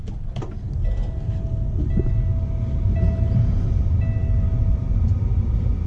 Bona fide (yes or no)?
yes